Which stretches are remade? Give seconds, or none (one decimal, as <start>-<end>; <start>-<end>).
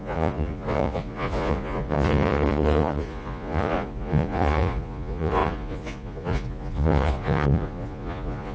0.0-8.5